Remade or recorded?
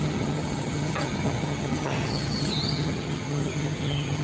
remade